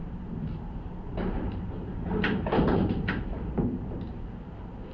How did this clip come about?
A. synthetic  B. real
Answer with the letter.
A